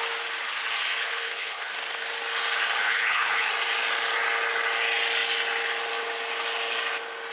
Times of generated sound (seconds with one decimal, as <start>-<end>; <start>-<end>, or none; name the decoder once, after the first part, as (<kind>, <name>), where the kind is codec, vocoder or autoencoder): 1.0-1.7 (codec, HILCodec); 2.8-3.5